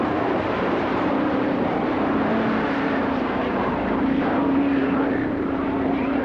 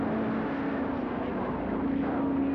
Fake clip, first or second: first